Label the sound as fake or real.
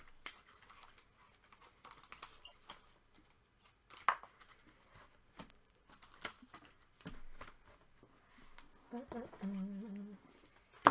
real